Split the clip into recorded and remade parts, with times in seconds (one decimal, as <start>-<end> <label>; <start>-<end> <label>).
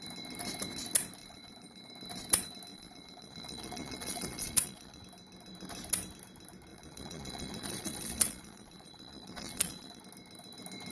0.0-1.2 recorded; 1.2-1.9 remade; 1.9-2.7 recorded; 2.7-5.0 remade; 5.0-6.7 recorded; 6.7-10.0 remade; 10.0-10.9 recorded